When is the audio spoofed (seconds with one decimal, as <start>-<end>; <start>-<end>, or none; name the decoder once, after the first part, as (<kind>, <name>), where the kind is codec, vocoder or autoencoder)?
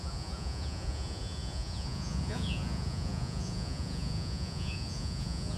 0.0-5.6 (vocoder, Vocos)